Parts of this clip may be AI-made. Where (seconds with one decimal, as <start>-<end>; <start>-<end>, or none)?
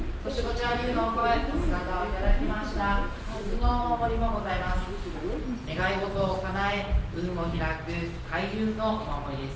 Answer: 0.0-1.2; 3.1-3.7; 8.9-9.6